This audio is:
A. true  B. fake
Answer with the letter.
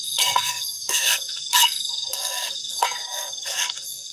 B